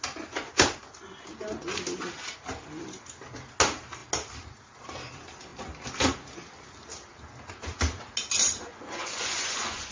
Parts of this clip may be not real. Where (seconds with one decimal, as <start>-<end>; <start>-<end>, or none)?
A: 8.7-9.9